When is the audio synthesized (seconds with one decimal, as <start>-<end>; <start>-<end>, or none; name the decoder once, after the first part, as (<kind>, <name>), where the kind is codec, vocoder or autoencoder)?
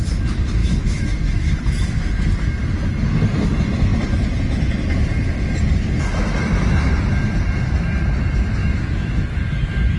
0.6-1.7 (autoencoder, DAC-VAE); 8.6-9.4